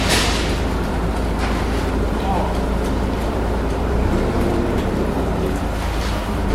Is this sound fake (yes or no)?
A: yes